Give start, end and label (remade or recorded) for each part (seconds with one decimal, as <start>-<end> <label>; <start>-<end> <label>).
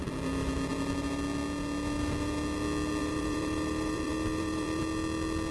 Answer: 0.0-3.0 recorded; 3.0-4.8 remade; 4.8-5.5 recorded